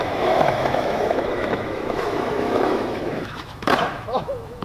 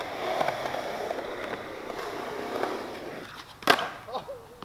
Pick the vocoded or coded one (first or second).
first